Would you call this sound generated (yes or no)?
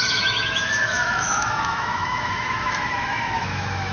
yes